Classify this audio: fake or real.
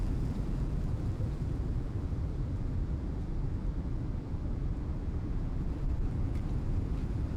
fake